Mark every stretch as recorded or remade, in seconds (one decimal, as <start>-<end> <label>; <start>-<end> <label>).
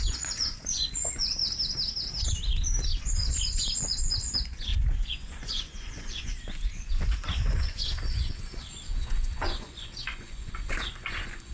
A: 0.0-1.4 remade; 1.4-3.0 recorded; 3.0-11.5 remade